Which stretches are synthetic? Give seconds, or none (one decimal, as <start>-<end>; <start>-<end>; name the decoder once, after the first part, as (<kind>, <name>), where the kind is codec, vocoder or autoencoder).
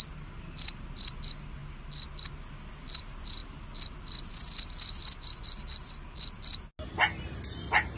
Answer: none